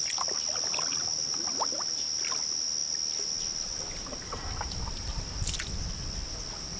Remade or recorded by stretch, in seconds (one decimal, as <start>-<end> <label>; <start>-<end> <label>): 0.0-6.8 recorded